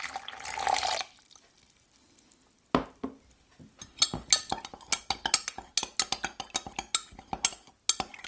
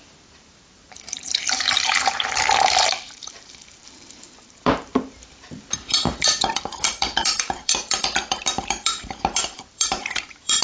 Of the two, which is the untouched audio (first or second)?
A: first